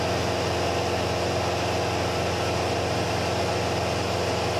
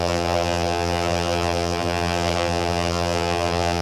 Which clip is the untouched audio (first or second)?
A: first